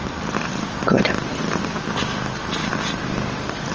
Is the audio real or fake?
real